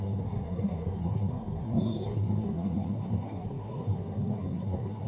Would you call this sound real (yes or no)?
no